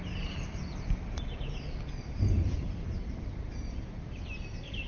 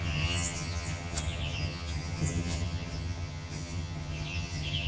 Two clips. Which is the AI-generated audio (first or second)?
second